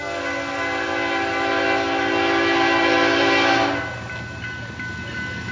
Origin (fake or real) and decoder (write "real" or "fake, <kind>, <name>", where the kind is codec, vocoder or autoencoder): real